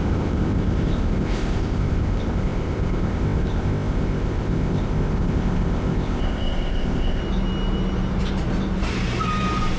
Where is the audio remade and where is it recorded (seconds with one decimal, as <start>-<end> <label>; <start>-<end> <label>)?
0.0-7.2 remade; 7.2-9.8 recorded